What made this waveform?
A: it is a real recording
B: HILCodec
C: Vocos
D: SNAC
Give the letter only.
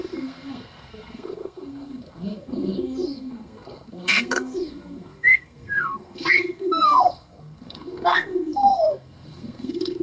D